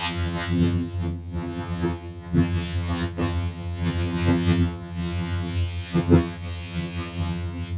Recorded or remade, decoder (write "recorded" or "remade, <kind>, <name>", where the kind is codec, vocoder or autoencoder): remade, vocoder, HiFi-GAN